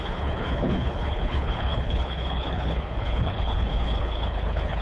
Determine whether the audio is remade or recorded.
remade